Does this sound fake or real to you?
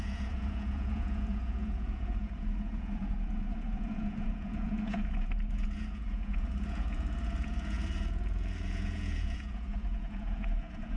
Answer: fake